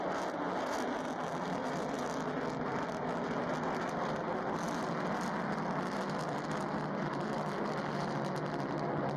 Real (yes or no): yes